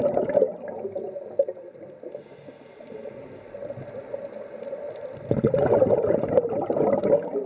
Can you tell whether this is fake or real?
real